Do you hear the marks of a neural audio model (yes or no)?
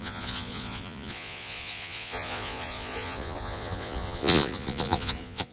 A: yes